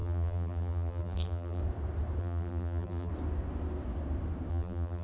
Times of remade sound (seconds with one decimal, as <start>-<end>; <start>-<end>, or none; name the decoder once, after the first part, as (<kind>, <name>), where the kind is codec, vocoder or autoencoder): 0.0-1.6 (vocoder, BigVGAN v2); 2.2-3.1; 4.5-5.0